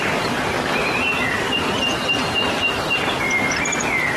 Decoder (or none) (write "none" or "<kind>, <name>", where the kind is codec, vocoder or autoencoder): none